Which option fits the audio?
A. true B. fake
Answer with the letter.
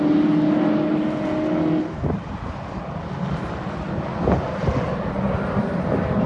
A